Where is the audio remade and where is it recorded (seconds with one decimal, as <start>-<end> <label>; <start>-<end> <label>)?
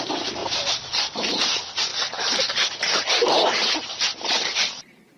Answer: 0.0-0.4 recorded; 0.4-1.4 remade; 1.4-3.2 recorded; 3.2-4.6 remade; 4.6-5.2 recorded